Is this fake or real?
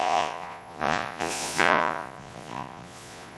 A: fake